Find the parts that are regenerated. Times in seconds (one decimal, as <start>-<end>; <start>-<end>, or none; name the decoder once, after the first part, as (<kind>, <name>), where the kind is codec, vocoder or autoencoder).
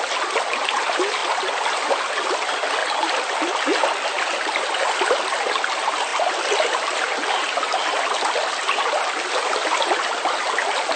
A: none